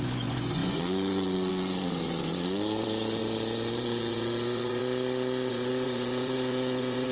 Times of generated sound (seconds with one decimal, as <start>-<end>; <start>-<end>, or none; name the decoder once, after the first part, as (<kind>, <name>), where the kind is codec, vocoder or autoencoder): 0.0-4.8 (vocoder, Vocos); 5.5-7.1